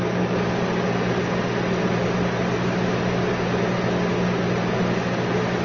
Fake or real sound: real